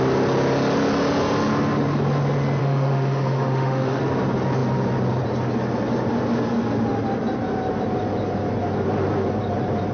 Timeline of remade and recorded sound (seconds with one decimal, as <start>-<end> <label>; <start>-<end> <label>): 0.0-2.6 recorded; 2.6-4.0 remade; 4.0-9.9 recorded